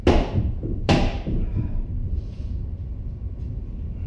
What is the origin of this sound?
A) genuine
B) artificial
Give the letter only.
B